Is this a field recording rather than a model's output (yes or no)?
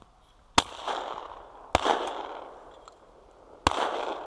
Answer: yes